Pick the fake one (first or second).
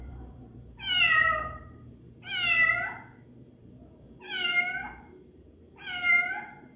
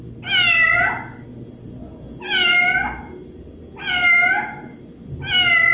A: first